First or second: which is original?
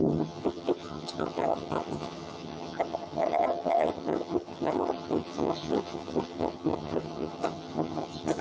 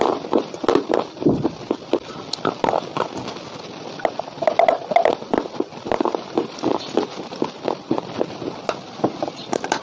second